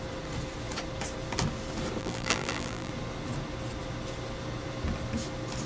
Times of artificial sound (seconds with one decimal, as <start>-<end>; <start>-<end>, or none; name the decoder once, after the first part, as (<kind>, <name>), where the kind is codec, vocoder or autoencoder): 2.0-2.9 (vocoder, BigVGAN v2)